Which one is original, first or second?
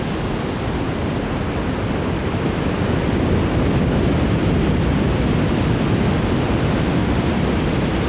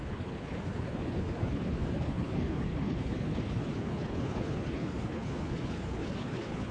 first